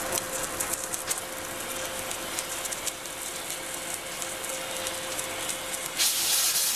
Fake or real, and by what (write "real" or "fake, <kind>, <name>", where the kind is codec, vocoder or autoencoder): real